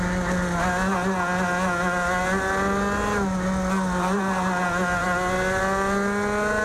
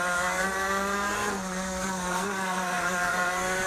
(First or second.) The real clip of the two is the first